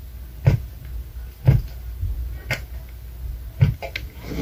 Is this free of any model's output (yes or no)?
yes